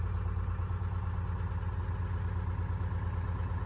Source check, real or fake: real